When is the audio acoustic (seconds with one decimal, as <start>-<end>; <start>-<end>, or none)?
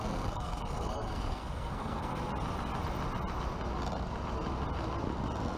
2.2-5.6